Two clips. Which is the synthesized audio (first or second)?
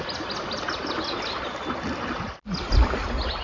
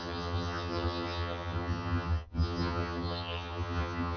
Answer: second